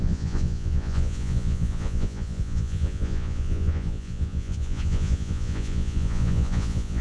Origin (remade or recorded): remade